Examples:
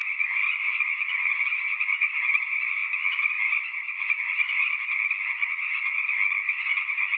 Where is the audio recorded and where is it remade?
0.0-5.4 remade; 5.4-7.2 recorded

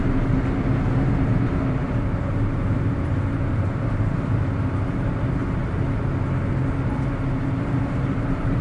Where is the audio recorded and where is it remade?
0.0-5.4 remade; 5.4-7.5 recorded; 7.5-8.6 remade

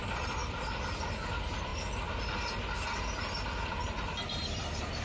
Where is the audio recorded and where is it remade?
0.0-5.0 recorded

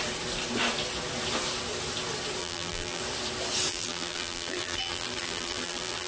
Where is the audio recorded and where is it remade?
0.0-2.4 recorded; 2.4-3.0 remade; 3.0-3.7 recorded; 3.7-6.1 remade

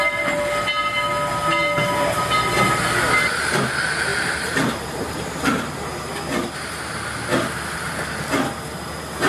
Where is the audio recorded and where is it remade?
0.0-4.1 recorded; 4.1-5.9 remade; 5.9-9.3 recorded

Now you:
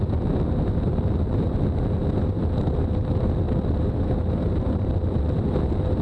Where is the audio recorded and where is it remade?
0.0-2.0 recorded; 2.0-4.9 remade; 4.9-6.0 recorded

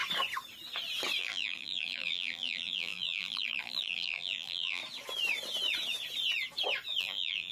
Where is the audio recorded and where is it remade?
0.0-1.2 recorded; 1.2-4.8 remade; 4.8-7.0 recorded; 7.0-7.5 remade